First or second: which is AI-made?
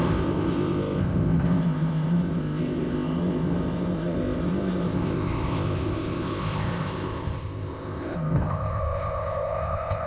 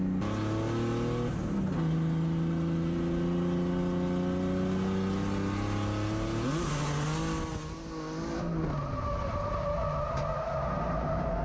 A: first